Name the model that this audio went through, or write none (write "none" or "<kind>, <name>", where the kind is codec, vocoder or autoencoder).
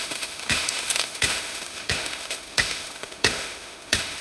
autoencoder, DAC-VAE